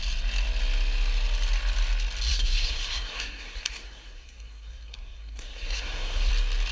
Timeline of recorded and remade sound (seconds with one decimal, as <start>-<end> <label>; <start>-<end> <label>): 0.0-2.3 recorded; 2.3-6.3 remade; 6.3-6.7 recorded